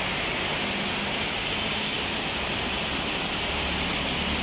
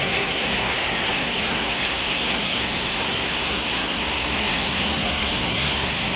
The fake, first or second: second